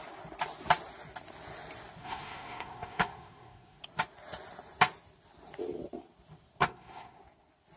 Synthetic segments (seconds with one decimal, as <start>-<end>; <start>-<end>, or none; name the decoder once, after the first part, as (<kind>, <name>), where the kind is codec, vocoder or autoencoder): 2.0-3.8 (codec, SNAC); 6.6-7.2